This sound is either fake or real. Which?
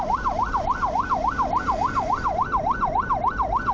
real